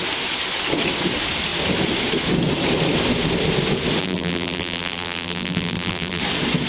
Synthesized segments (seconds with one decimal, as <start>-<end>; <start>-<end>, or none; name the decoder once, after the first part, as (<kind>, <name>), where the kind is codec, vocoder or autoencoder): 4.0-6.2 (vocoder, BigVGAN v2)